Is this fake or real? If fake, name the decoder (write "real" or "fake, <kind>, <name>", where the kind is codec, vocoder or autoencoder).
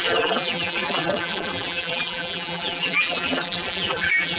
fake, vocoder, BigVGAN v2